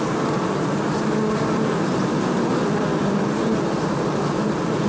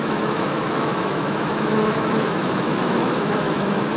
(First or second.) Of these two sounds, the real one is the first